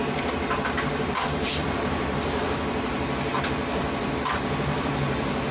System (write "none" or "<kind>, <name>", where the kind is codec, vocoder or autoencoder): vocoder, BigVGAN v2